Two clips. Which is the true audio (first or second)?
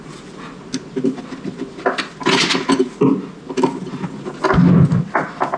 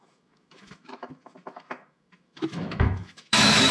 first